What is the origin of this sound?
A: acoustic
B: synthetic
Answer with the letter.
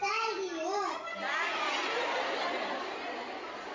A